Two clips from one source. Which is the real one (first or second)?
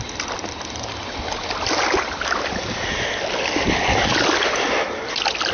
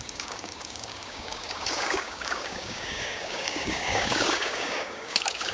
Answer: first